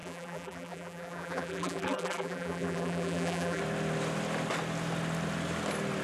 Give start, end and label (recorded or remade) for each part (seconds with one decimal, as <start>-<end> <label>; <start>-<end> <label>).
0.0-3.6 remade; 3.6-6.0 recorded